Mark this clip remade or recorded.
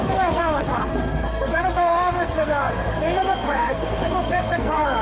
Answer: remade